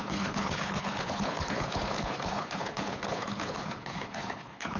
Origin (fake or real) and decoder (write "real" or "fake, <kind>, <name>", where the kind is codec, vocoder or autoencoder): fake, codec, HILCodec